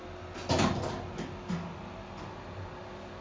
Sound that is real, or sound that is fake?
real